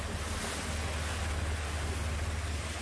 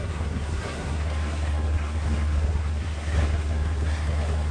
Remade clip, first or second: second